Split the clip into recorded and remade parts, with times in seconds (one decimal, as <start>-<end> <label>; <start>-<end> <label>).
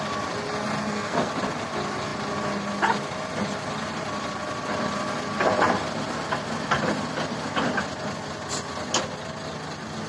0.0-0.8 recorded; 0.8-1.3 remade; 1.3-10.1 recorded